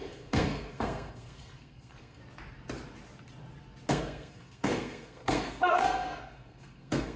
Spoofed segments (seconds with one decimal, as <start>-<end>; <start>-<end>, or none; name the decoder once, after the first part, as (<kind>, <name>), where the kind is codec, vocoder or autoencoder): 0.0-2.2 (codec, SNAC); 3.9-7.2